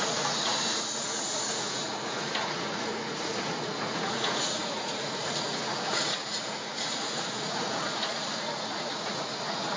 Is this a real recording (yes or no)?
no